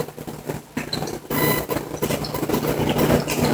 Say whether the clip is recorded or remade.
recorded